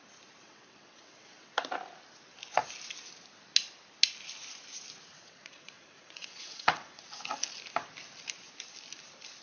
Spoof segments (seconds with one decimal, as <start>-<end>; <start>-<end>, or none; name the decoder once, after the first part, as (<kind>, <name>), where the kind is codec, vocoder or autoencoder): 0.4-1.6 (vocoder, WaveNeXt); 5.1-7.0